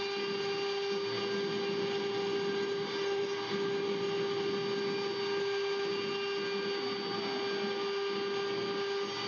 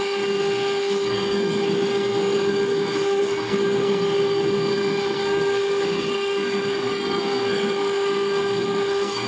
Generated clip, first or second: second